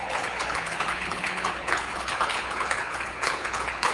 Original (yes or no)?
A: no